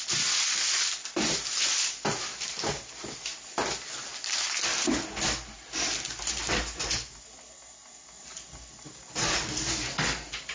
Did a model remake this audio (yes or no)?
no